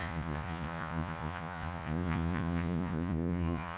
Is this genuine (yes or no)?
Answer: no